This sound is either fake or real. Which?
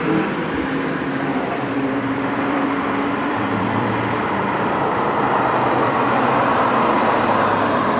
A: fake